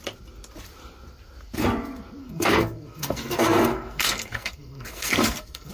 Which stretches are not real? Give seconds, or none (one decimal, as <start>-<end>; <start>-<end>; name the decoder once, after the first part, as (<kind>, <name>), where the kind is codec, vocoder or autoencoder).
2.2-5.7 (codec, SNAC)